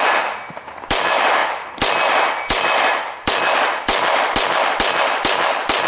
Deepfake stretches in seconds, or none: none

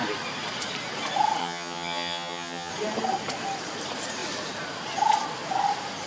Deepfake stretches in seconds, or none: 1.4-2.7 (vocoder, HiFi-GAN)

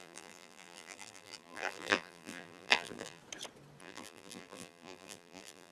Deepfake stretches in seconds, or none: 0.0-3.2 (vocoder, BigVGAN v2); 3.8-5.7

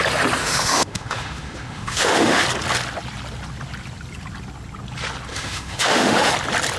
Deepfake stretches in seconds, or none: 0.4-2.4 (autoencoder, DAC-VAE); 5.3-6.3

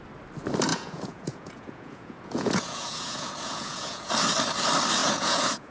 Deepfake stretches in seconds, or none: 0.7-4.1 (vocoder, Vocos); 5.0-5.7

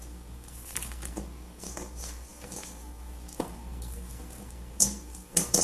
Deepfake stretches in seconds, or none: 0.0-5.6 (codec, SNAC)

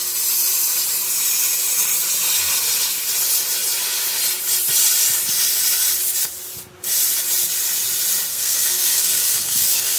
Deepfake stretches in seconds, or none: 8.3-10.0 (codec, SNAC)

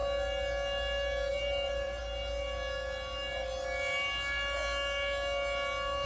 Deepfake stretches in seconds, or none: 1.3-2.0 (vocoder, BigVGAN v2)